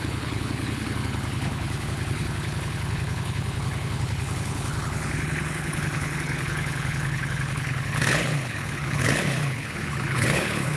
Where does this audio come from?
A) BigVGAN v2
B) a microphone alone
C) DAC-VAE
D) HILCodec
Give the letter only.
D